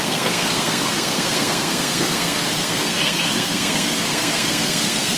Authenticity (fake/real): fake